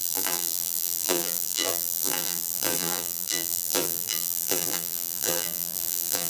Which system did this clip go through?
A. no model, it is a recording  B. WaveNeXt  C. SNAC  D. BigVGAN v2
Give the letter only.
D